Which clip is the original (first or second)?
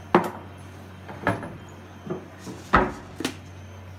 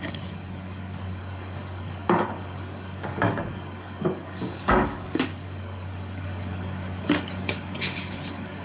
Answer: first